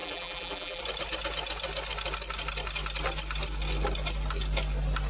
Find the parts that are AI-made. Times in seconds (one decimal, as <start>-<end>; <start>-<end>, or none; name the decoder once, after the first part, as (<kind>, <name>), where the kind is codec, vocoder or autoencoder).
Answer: 0.0-0.8 (vocoder, BigVGAN v2)